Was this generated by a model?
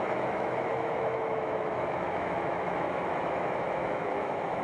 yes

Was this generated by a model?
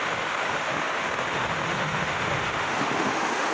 yes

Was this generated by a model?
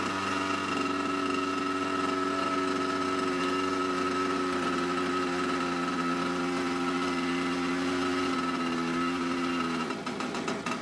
no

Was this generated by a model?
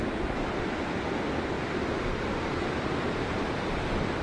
no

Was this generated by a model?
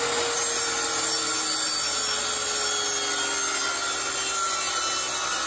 no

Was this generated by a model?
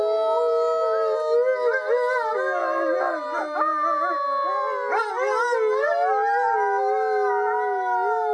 no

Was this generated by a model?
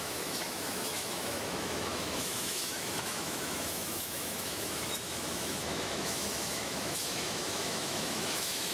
yes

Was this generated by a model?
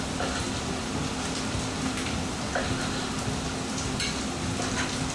no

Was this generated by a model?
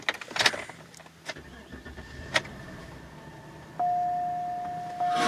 no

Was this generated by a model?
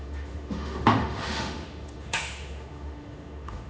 yes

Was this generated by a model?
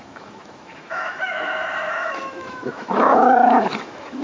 yes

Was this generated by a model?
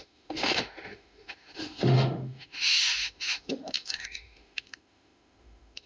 yes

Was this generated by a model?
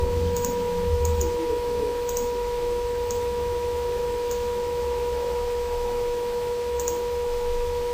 yes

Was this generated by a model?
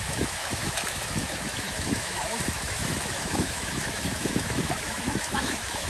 yes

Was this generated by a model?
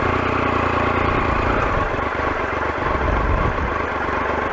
no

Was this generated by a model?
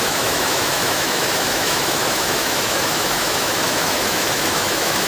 yes